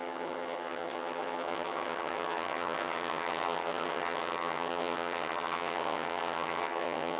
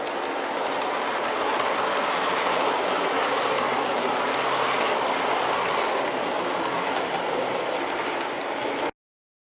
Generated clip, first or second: first